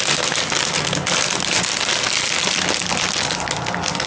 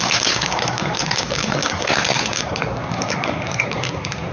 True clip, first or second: first